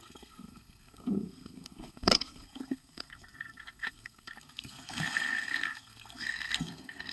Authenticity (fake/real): fake